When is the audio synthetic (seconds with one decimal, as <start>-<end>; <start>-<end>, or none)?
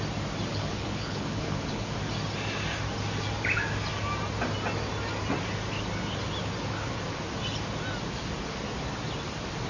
0.5-1.9